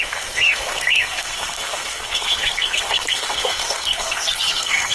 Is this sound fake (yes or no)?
yes